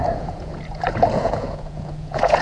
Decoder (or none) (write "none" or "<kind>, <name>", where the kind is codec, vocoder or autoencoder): vocoder, Vocos